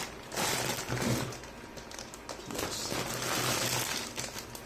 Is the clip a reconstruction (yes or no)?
no